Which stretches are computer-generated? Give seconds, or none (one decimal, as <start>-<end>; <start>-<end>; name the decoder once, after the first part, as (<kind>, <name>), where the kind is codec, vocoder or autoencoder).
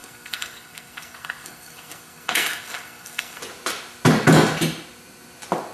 0.0-3.4 (codec, SNAC)